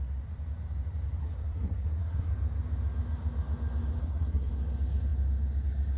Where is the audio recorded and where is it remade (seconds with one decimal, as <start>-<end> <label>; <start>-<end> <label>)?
0.0-1.2 recorded; 1.2-2.3 remade; 2.3-4.0 recorded; 4.0-4.5 remade; 4.5-6.0 recorded